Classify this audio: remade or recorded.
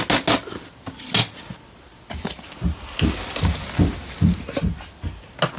recorded